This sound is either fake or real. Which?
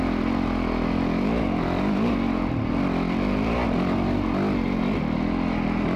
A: real